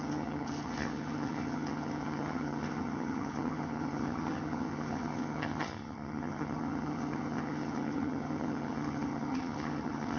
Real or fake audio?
fake